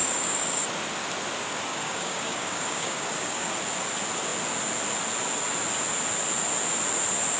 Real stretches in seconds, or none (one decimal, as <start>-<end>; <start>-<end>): 0.6-1.7; 3.5-7.4